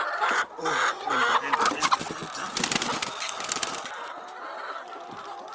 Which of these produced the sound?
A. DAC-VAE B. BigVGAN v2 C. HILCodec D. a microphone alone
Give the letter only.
D